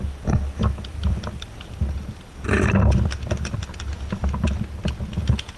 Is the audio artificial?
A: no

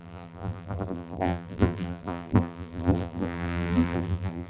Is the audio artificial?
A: yes